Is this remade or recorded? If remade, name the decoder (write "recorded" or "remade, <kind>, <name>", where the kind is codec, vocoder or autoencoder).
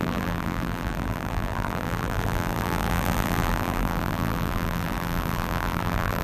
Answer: remade, vocoder, BigVGAN v2